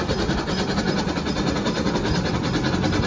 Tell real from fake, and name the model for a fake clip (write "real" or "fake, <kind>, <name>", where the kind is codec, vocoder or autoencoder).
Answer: real